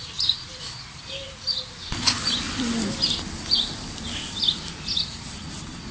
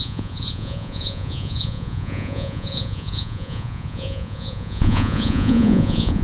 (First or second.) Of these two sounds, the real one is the first